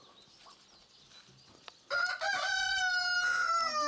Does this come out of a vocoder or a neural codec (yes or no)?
no